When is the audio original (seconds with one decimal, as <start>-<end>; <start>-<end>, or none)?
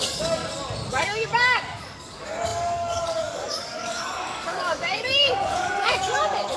0.4-0.9